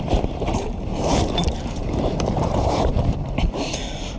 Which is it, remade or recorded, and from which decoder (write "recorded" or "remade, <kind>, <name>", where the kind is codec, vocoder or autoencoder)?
remade, vocoder, BigVGAN v2